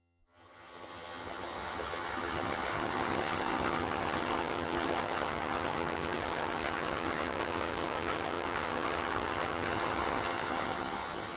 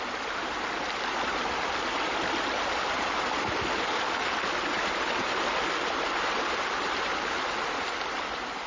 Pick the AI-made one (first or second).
first